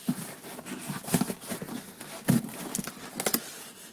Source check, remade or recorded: recorded